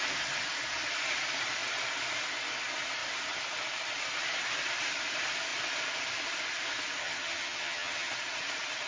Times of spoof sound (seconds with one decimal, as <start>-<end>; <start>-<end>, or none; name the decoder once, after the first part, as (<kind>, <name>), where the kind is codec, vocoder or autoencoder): 7.0-8.1 (vocoder, HiFi-GAN)